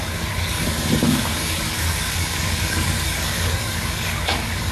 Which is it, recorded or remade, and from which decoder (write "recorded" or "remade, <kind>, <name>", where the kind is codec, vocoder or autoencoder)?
remade, codec, DAC